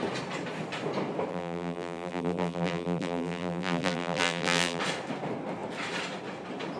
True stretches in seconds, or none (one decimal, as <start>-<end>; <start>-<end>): 0.0-1.3; 4.8-6.8